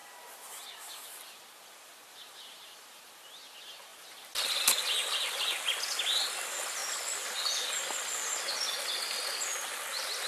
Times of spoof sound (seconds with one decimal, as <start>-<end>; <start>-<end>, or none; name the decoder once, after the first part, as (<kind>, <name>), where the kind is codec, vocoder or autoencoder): 0.0-1.2 (vocoder, BigVGAN v2); 1.9-3.1; 3.9-4.6